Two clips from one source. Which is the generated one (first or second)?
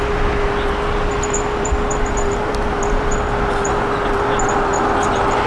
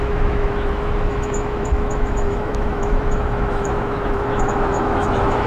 second